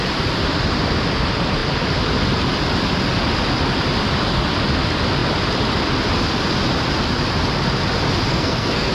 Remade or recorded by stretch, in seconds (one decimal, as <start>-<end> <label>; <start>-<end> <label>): 0.0-8.3 recorded; 8.3-8.9 remade